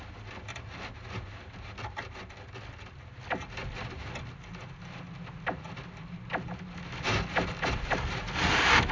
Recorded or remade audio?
recorded